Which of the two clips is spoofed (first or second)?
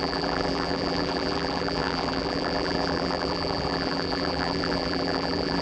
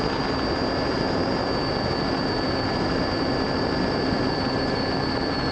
first